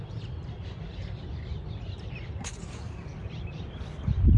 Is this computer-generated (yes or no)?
no